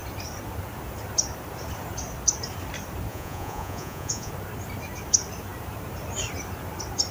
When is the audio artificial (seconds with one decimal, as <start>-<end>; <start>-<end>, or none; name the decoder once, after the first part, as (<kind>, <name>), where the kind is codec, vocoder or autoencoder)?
3.1-4.3 (vocoder, Vocos)